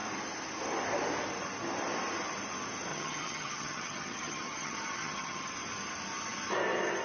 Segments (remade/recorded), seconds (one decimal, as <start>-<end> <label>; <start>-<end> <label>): 0.0-2.9 recorded; 2.9-5.5 remade; 5.5-7.0 recorded